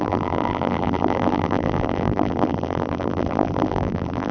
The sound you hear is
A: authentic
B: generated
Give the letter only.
B